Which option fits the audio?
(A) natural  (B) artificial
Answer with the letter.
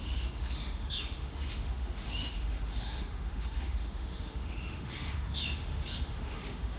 B